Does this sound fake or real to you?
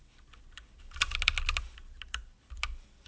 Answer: real